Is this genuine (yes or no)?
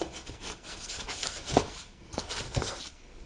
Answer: no